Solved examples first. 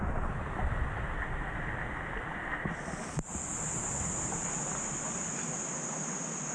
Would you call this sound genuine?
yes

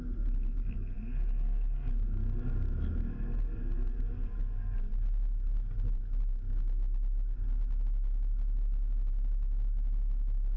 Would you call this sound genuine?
yes